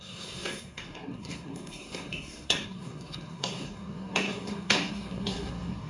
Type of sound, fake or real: fake